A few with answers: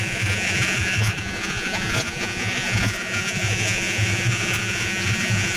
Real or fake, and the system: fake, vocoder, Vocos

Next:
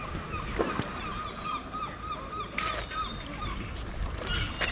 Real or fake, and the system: real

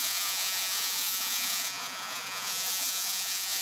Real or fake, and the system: fake, vocoder, Vocos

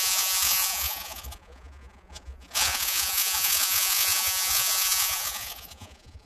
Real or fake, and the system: fake, vocoder, Vocos